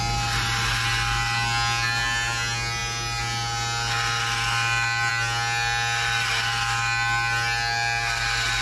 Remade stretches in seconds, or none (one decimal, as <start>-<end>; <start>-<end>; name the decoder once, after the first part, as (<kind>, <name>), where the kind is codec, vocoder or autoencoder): none